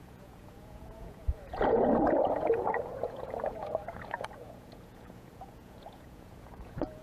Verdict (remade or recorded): remade